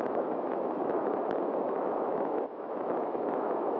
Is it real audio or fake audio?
fake